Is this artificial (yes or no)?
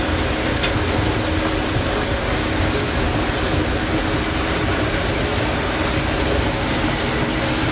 no